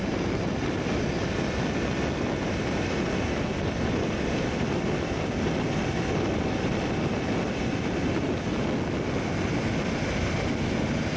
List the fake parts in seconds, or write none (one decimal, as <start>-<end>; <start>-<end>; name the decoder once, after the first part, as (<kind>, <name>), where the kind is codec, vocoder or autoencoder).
0.0-0.5 (vocoder, BigVGAN v2)